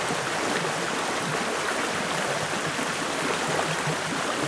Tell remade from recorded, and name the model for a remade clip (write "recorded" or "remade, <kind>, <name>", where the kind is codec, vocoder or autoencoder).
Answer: recorded